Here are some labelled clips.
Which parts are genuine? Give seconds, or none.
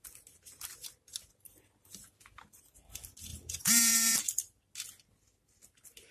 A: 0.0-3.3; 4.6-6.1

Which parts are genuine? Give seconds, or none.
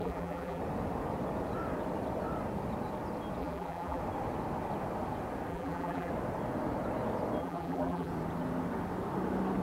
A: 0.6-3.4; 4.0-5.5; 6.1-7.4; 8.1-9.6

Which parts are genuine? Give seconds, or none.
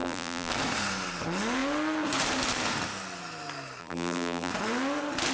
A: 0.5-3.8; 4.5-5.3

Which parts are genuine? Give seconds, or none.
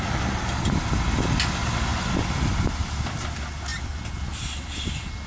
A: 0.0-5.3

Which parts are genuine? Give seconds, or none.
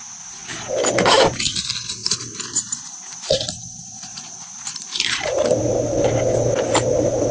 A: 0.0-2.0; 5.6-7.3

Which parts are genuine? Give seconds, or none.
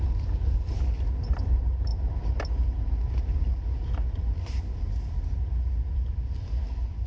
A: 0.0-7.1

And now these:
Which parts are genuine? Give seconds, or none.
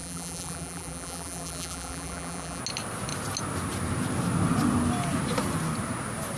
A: 2.6-6.4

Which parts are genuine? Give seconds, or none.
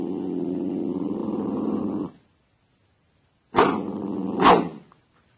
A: 0.0-1.2; 1.8-5.4